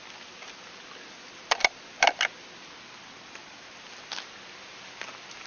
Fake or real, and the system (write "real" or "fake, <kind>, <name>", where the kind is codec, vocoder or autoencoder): real